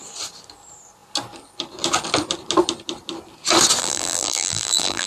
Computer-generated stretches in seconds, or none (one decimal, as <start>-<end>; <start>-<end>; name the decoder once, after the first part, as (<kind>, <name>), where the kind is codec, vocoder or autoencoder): 3.8-5.1 (vocoder, BigVGAN v2)

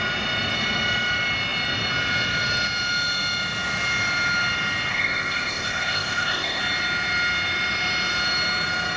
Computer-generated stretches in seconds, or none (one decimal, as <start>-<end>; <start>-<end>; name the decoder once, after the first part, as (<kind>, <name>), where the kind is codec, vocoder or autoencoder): 4.9-6.6 (codec, ZipCodec)

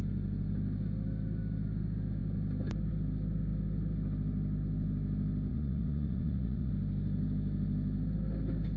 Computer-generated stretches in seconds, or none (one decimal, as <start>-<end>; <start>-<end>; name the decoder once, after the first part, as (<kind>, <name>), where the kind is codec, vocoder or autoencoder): 5.5-6.7 (vocoder, Vocos)

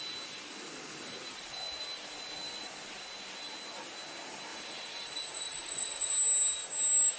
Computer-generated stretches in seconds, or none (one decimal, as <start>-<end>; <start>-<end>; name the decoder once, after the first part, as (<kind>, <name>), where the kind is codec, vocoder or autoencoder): 4.5-6.1 (vocoder, BigVGAN v2)

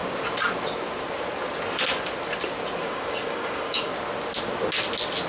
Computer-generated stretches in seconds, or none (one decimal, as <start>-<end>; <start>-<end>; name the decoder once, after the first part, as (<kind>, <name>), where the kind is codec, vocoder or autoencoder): 2.8-3.9 (codec, DAC)

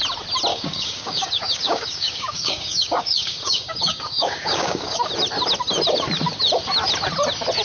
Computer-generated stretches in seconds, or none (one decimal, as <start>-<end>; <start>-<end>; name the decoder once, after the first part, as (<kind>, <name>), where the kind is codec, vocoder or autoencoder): 0.5-5.1 (codec, DAC)